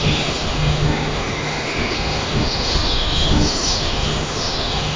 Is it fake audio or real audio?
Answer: fake